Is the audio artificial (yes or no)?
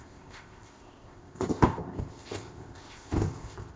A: yes